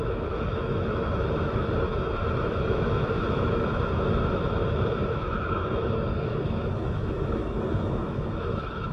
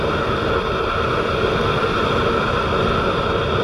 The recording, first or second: second